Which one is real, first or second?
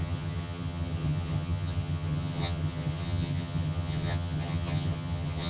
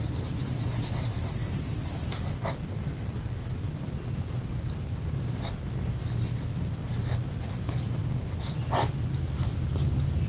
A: second